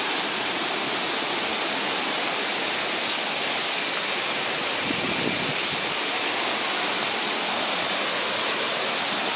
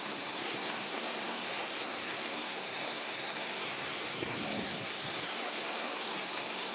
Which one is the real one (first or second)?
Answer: first